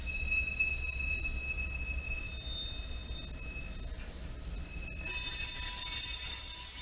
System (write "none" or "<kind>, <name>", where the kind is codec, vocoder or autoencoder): none